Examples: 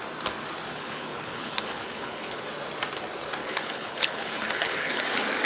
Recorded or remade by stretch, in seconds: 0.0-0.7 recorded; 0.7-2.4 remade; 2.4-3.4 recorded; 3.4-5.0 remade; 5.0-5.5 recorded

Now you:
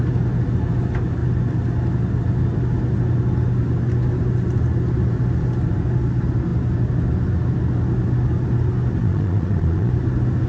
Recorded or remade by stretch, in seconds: 0.0-9.0 recorded; 9.0-9.9 remade; 9.9-10.5 recorded